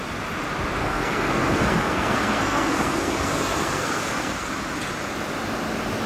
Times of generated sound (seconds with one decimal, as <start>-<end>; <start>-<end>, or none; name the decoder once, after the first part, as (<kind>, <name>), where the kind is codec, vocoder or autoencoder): 0.8-4.5 (codec, SNAC)